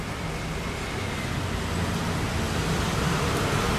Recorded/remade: recorded